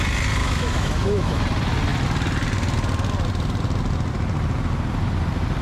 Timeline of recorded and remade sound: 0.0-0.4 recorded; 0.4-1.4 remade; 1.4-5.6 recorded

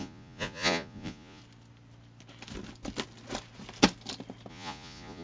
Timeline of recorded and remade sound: 0.0-1.4 remade; 1.4-4.5 recorded; 4.5-5.2 remade